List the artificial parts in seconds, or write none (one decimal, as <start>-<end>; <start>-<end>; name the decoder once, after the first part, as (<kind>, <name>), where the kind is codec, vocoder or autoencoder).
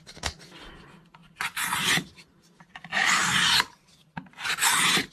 none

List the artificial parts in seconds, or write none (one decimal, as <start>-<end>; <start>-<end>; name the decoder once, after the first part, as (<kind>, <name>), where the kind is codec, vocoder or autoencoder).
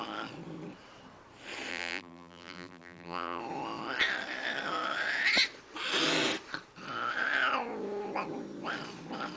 1.7-3.4 (vocoder, BigVGAN v2)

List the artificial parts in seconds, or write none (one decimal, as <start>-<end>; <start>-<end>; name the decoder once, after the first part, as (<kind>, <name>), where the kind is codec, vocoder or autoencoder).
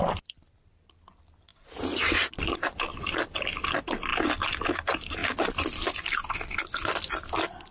0.0-1.5 (vocoder, BigVGAN v2); 2.3-4.1; 4.7-7.7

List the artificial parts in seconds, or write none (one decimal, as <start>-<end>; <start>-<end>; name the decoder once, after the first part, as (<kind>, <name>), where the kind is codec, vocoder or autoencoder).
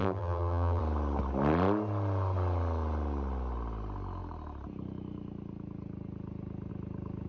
0.0-0.8 (vocoder, BigVGAN v2)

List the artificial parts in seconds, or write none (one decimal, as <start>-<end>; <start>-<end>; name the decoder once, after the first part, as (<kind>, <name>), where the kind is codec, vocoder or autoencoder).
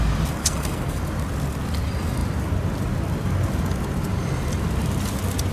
0.4-1.0 (codec, SNAC)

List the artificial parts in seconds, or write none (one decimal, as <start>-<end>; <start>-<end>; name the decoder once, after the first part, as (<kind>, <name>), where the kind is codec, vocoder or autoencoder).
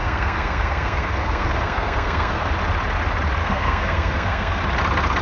0.0-2.5 (codec, SNAC); 3.4-4.6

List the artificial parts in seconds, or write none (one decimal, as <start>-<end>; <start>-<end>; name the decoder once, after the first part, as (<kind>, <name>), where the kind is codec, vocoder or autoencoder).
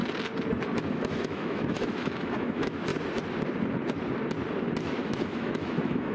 0.9-2.9 (autoencoder, DAC-VAE); 4.8-6.1